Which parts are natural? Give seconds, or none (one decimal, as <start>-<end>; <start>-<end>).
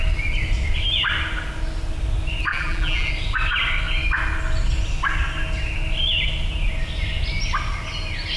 0.0-2.5; 3.1-8.4